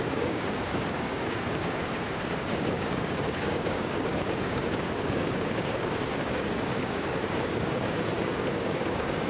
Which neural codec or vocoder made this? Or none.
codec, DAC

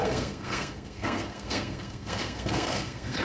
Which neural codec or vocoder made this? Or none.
codec, SNAC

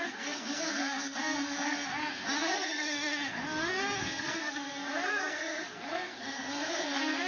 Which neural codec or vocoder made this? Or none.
codec, SNAC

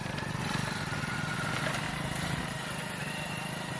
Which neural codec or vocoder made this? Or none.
none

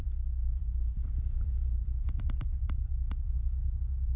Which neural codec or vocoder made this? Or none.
vocoder, BigVGAN v2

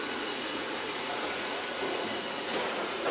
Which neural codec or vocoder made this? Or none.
vocoder, Vocos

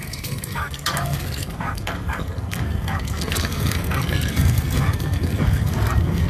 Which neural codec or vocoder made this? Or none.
codec, SNAC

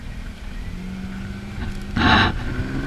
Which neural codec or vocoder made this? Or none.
none